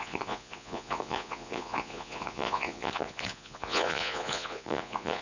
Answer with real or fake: fake